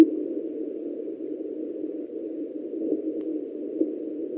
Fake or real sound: real